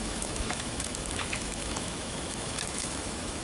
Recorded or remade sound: remade